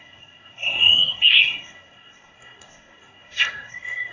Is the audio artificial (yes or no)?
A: yes